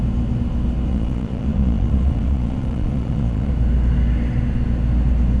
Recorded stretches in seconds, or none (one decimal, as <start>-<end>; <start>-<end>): 0.0-0.9; 3.5-5.4